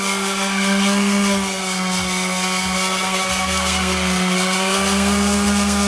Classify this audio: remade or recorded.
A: remade